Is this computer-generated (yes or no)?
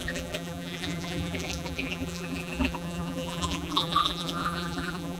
yes